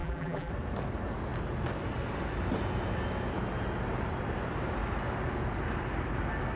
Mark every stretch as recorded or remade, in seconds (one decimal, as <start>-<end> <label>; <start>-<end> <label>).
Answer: 0.0-0.5 remade; 0.5-6.6 recorded